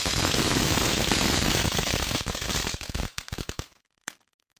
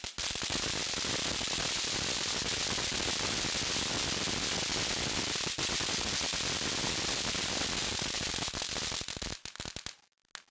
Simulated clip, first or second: first